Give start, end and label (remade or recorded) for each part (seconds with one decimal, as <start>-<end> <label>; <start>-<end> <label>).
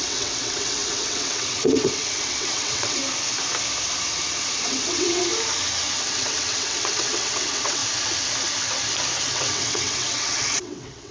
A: 0.0-3.0 remade; 3.0-4.6 recorded; 4.6-5.3 remade; 5.3-6.0 recorded; 6.0-7.8 remade; 7.8-9.3 recorded; 9.3-11.1 remade